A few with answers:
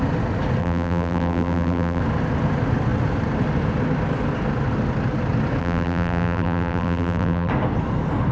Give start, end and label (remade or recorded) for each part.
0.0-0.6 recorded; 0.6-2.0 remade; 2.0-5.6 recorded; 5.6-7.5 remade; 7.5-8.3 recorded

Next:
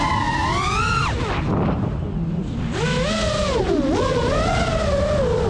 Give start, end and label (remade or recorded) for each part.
0.0-5.5 recorded

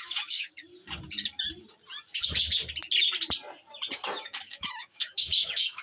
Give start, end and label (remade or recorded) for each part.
0.0-0.7 remade; 0.7-4.2 recorded; 4.2-5.8 remade

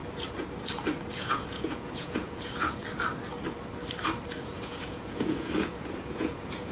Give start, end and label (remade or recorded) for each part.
0.0-1.2 recorded; 1.2-2.8 remade; 2.8-4.4 recorded; 4.4-6.7 remade

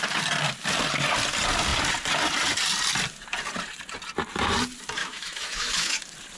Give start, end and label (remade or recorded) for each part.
0.0-5.0 recorded; 5.0-6.0 remade; 6.0-6.4 recorded

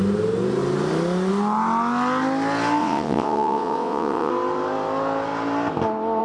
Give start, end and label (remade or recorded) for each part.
0.0-2.8 recorded; 2.8-4.3 remade; 4.3-6.2 recorded

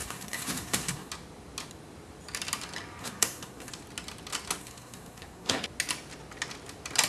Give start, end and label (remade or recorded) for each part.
0.0-1.1 remade; 1.1-3.0 recorded; 3.0-3.7 remade; 3.7-4.6 recorded; 4.6-5.6 remade; 5.6-7.1 recorded

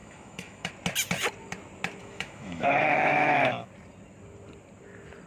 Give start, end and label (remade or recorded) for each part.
0.0-0.7 remade; 0.7-2.0 recorded; 2.0-3.7 remade; 3.7-5.3 recorded